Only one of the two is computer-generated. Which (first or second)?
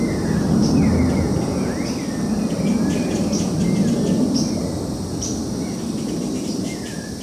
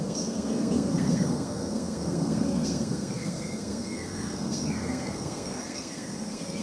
second